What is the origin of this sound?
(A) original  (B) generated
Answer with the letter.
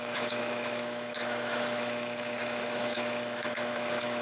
B